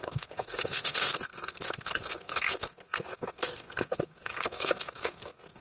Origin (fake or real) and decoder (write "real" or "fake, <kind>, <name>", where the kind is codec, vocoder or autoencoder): fake, codec, SNAC